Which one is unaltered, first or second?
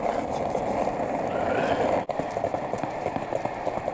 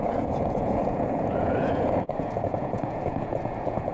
first